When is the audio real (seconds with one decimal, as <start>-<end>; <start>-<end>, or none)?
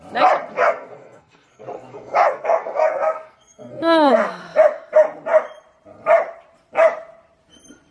0.0-0.5; 4.4-7.9